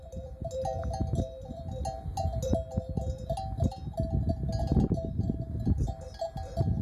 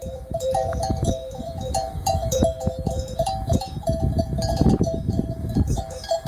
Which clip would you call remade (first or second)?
second